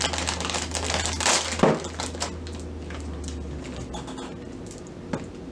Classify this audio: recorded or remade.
recorded